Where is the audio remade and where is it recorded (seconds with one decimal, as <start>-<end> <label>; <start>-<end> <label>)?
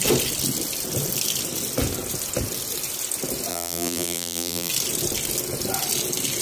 0.0-3.5 recorded; 3.5-4.7 remade; 4.7-6.4 recorded